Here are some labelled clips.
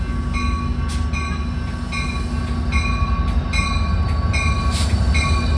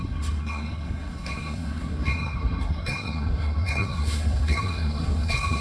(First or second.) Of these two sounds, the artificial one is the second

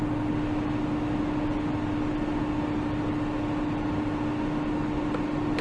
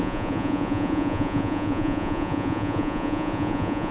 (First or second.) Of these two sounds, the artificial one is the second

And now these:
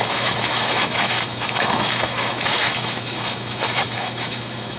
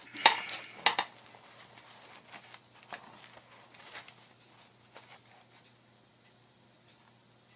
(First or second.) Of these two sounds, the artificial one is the first